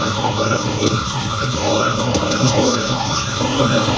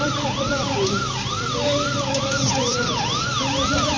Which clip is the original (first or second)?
second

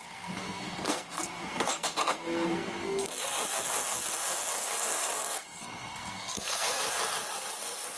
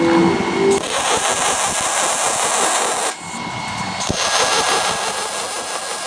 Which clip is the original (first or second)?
second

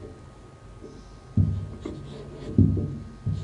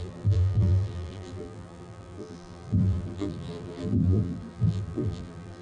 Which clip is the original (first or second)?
first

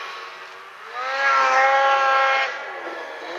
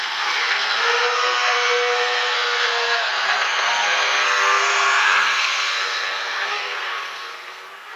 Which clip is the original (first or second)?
first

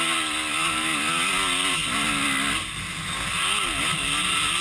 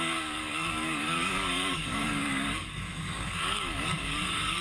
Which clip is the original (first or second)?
first